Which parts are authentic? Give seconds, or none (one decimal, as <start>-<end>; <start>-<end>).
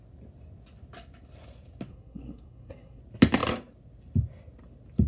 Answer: 0.0-1.9; 3.0-5.1